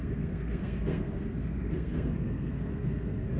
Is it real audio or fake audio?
fake